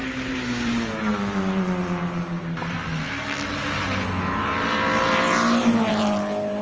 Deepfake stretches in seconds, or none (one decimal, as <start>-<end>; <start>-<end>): 0.0-2.9; 4.2-6.6